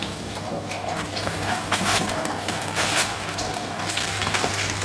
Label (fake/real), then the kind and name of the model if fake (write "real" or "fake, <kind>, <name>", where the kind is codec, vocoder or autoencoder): fake, codec, DAC